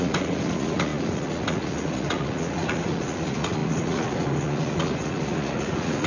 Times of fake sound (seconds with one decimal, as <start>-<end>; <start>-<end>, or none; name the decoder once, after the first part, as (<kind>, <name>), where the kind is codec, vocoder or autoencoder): 0.0-6.1 (vocoder, Vocos)